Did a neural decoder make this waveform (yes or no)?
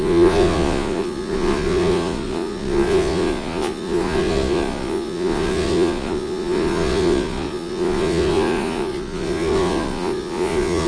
yes